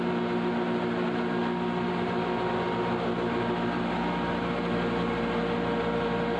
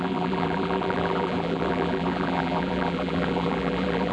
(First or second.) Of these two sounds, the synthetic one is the second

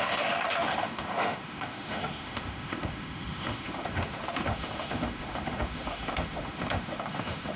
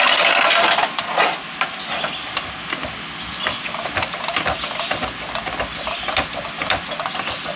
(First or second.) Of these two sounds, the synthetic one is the first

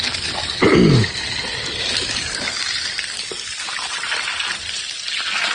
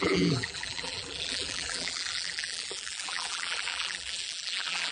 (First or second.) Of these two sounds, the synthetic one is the second